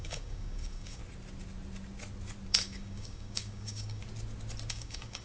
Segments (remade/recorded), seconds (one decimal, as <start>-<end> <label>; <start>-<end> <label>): 0.0-1.0 remade; 1.0-2.5 recorded; 2.5-4.0 remade; 4.0-4.7 recorded; 4.7-5.2 remade